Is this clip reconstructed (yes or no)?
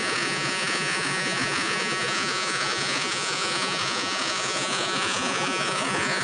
yes